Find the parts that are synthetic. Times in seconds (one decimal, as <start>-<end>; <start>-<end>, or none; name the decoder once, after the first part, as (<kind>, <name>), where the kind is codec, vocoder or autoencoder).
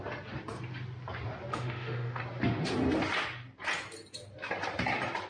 1.5-2.2 (autoencoder, DAC-VAE)